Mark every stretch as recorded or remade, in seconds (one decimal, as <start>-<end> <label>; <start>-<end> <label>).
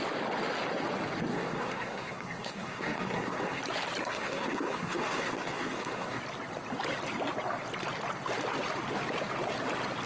0.0-1.3 recorded; 1.3-3.6 remade; 3.6-4.0 recorded; 4.0-6.2 remade; 6.2-10.1 recorded